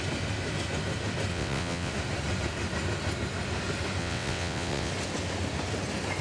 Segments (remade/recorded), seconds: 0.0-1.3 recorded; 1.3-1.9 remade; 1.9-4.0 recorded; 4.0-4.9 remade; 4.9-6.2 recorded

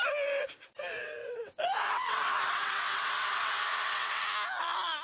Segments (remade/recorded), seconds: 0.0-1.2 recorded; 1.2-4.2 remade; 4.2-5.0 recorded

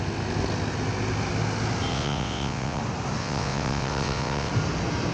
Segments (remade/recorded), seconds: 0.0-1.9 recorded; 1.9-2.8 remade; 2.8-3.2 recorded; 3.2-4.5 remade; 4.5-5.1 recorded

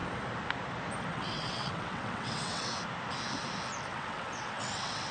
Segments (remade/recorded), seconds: 0.0-1.1 recorded; 1.1-2.7 remade; 2.7-3.9 recorded; 3.9-5.1 remade